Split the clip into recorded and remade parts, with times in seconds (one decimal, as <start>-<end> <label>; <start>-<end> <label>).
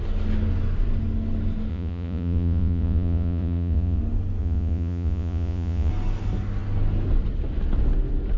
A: 0.0-1.7 recorded; 1.7-4.0 remade; 4.0-4.4 recorded; 4.4-5.9 remade; 5.9-8.4 recorded